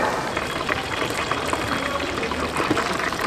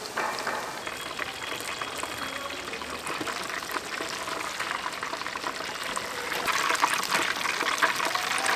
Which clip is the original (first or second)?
second